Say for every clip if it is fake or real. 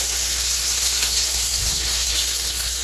fake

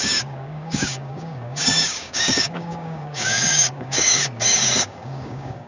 fake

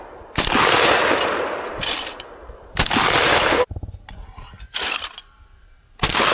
real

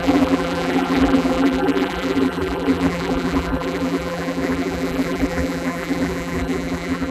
fake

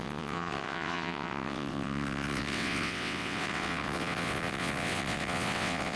fake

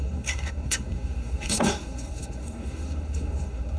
fake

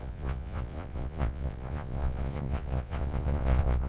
fake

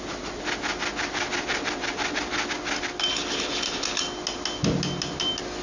real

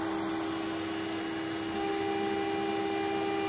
real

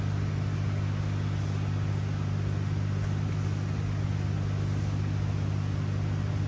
real